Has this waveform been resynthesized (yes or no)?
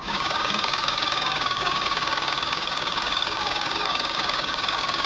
yes